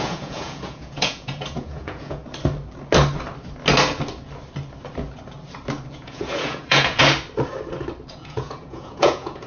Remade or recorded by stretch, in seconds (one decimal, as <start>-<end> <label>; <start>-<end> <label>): 0.0-2.2 remade; 2.2-5.9 recorded; 5.9-7.0 remade; 7.0-8.1 recorded; 8.1-9.5 remade